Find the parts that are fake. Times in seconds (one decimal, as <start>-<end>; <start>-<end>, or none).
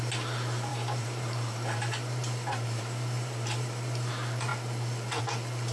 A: 0.7-4.1